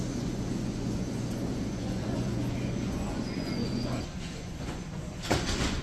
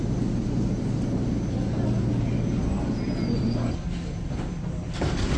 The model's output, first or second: first